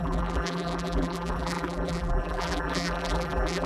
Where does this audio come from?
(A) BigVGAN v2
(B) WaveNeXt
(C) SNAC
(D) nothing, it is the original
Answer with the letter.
A